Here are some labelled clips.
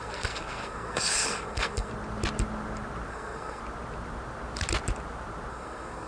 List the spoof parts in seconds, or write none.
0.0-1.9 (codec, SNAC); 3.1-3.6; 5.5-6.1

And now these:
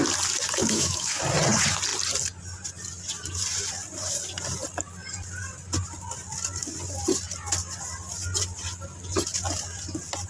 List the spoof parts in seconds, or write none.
0.6-1.2 (autoencoder, DAC-VAE)

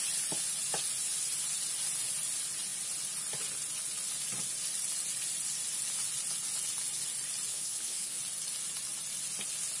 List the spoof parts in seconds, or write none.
7.5-8.2 (codec, HILCodec)

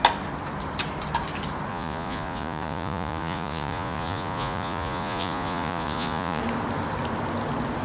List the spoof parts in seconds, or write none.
1.7-6.4 (vocoder, Vocos)

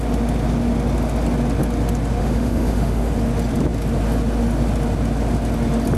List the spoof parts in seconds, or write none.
2.2-3.1 (autoencoder, DAC-VAE)

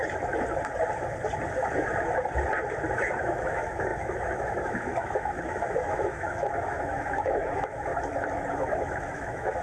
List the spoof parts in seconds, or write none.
3.2-7.9 (autoencoder, DAC-VAE); 8.5-9.6